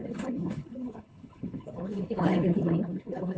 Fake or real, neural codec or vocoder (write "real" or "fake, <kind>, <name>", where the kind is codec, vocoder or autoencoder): fake, codec, HILCodec